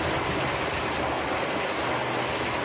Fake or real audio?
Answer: real